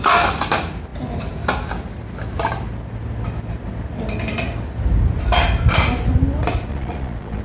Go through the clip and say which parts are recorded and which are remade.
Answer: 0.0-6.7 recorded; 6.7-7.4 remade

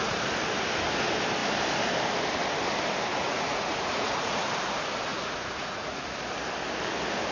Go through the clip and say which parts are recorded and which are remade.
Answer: 0.0-3.1 recorded; 3.1-4.5 remade; 4.5-5.1 recorded; 5.1-6.1 remade; 6.1-7.3 recorded

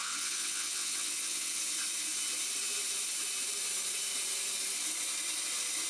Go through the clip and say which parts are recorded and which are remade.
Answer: 0.0-1.6 remade; 1.6-5.9 recorded

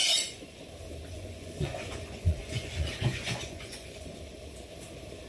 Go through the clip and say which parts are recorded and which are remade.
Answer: 0.0-0.6 remade; 0.6-1.1 recorded; 1.1-4.2 remade; 4.2-5.3 recorded

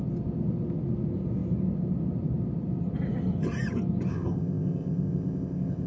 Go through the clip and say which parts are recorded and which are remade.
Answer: 0.0-4.1 recorded; 4.1-5.9 remade